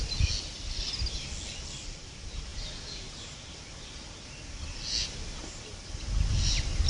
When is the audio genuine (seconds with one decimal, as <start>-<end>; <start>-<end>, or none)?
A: 0.0-6.9